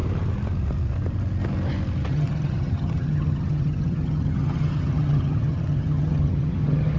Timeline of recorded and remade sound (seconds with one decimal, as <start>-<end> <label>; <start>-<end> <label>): 0.0-2.1 recorded; 2.1-7.0 remade